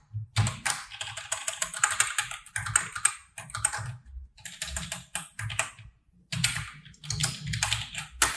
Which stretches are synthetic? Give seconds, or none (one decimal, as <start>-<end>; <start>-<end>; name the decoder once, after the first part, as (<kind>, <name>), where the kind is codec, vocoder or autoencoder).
1.4-2.5 (vocoder, BigVGAN v2); 7.2-7.9